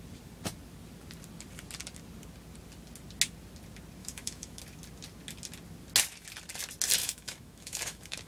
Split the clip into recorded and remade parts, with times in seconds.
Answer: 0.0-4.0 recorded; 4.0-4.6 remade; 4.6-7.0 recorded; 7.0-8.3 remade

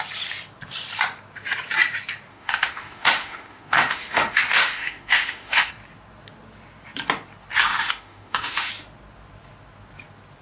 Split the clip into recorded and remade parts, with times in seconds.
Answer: 0.0-2.3 recorded; 2.3-5.7 remade; 5.7-7.6 recorded; 7.6-8.7 remade; 8.7-10.4 recorded

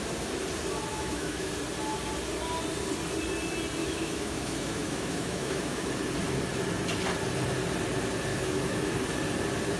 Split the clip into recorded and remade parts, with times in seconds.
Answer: 0.0-0.9 recorded; 0.9-1.5 remade; 1.5-3.8 recorded; 3.8-5.9 remade; 5.9-8.3 recorded; 8.3-8.9 remade; 8.9-9.8 recorded

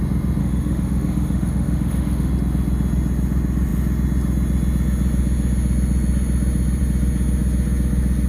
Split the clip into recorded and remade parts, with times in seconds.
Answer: 0.0-0.4 recorded; 0.4-2.3 remade; 2.3-8.3 recorded

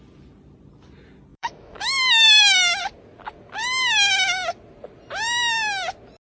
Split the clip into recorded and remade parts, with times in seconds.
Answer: 0.0-1.3 recorded; 1.3-2.8 remade; 2.8-6.2 recorded

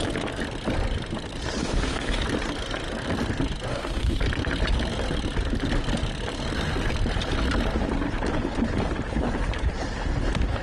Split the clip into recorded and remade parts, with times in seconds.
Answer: 0.0-1.6 recorded; 1.6-2.2 remade; 2.2-3.7 recorded; 3.7-4.2 remade; 4.2-10.6 recorded

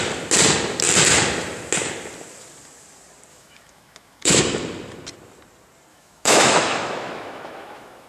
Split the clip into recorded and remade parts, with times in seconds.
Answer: 0.0-3.3 recorded; 3.3-4.4 remade; 4.4-5.9 recorded; 5.9-8.1 remade